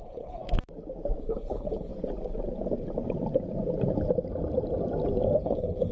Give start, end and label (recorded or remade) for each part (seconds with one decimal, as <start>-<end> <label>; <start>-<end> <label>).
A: 0.0-0.4 remade; 0.4-1.2 recorded; 1.2-1.9 remade; 1.9-5.4 recorded; 5.4-5.9 remade